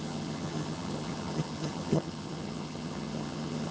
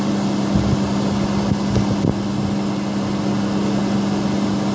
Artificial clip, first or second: first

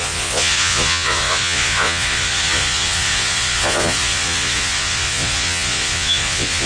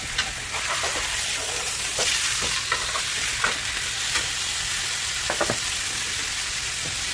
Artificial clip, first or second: first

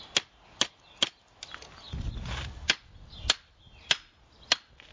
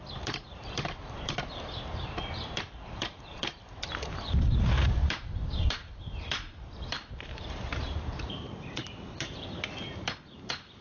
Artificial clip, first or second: second